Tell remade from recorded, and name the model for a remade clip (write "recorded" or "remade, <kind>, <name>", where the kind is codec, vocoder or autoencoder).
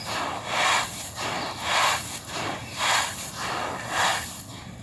recorded